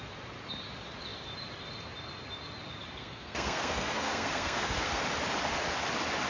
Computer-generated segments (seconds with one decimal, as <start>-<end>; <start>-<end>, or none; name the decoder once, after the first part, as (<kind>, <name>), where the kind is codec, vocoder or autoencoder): 3.0-5.0 (codec, SNAC)